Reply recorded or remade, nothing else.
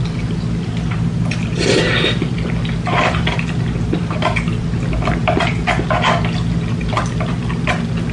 recorded